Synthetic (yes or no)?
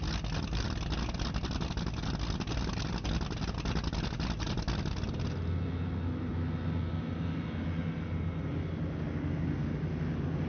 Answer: no